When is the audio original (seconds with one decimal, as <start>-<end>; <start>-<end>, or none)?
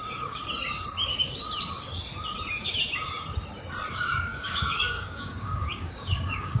0.4-3.9